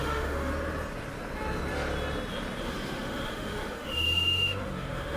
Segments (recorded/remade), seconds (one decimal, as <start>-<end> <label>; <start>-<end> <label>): 0.0-0.5 remade; 0.5-2.6 recorded; 2.6-5.2 remade